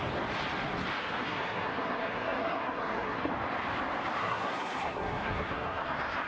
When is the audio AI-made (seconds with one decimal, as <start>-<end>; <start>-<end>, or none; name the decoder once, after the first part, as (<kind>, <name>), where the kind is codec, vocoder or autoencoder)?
1.0-3.3 (codec, SNAC); 4.2-5.8